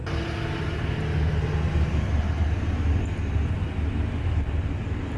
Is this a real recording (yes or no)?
yes